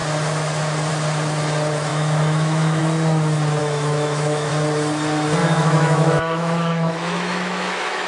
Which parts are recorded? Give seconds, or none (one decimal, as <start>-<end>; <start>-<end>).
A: 0.0-1.9; 2.8-3.6; 4.5-5.4